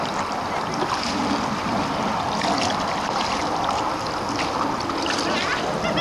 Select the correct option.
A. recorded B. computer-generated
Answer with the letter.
A